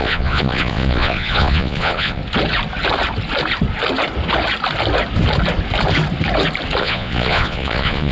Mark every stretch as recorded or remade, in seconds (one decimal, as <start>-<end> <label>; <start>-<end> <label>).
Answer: 0.0-2.2 remade; 2.2-6.8 recorded; 6.8-8.1 remade